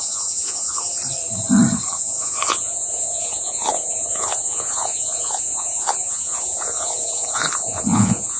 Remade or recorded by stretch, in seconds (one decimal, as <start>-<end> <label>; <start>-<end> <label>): 0.0-1.0 remade; 1.0-1.9 recorded; 1.9-8.4 remade